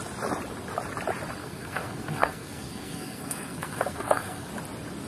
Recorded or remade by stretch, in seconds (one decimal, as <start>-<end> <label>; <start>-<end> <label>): 0.0-1.4 recorded; 1.4-4.5 remade; 4.5-5.1 recorded